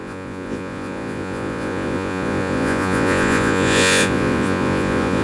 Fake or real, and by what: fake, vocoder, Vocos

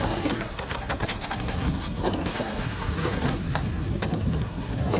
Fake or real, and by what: fake, codec, SNAC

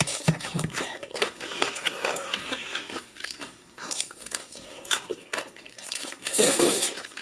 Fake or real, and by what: fake, codec, SNAC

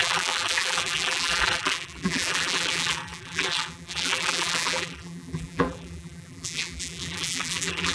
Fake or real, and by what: fake, vocoder, BigVGAN v2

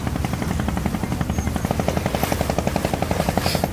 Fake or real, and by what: real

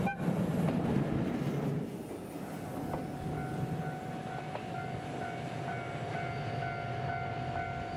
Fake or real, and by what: real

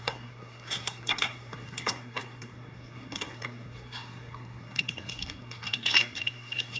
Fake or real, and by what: fake, codec, SNAC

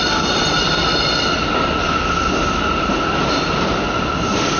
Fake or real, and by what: real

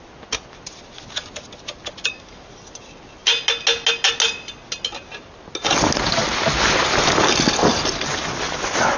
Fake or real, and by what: real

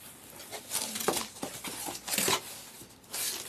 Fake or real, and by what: real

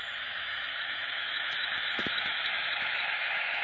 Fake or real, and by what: fake, autoencoder, DAC-VAE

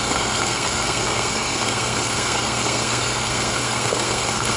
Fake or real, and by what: fake, codec, SNAC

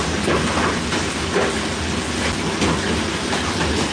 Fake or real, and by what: real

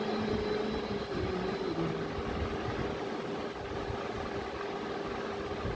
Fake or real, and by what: real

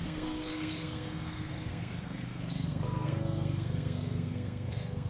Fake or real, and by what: fake, codec, SNAC